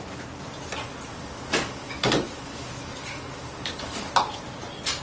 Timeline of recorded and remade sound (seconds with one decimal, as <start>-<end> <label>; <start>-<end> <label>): 0.0-1.1 recorded; 1.1-4.1 remade; 4.1-5.0 recorded